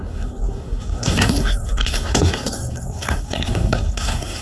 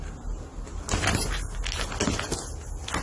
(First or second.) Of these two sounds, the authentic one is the second